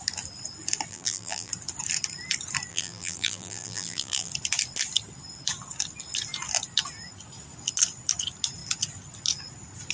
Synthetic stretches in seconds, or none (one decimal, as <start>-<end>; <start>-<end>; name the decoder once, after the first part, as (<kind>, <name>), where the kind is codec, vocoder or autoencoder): 0.9-1.5 (vocoder, BigVGAN v2); 2.7-4.3